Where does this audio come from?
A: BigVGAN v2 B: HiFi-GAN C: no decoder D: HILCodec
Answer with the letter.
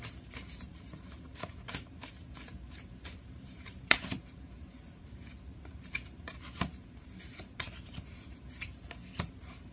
A